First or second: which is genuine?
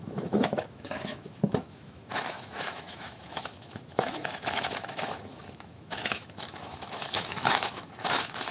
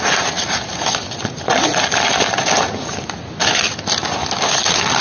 second